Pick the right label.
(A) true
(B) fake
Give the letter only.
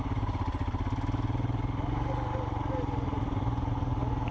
A